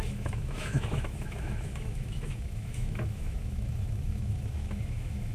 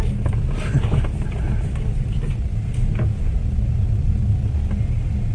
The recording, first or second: second